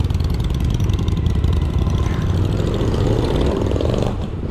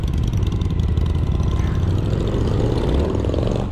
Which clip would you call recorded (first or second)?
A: second